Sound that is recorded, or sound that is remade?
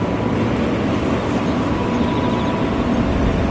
recorded